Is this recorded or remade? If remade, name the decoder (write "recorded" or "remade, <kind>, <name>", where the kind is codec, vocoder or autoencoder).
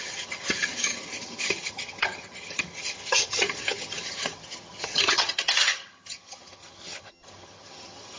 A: remade, vocoder, HiFi-GAN